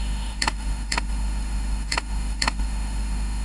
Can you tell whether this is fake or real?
fake